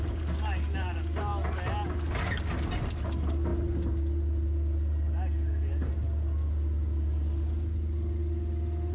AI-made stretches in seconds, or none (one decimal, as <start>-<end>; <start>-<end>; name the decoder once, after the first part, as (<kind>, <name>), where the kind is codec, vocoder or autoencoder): none